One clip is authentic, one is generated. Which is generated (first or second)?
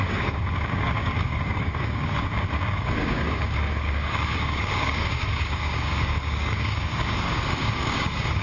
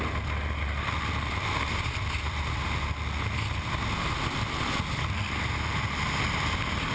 first